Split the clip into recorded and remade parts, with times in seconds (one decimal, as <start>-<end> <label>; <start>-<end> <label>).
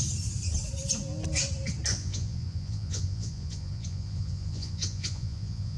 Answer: 0.0-1.9 recorded; 1.9-5.8 remade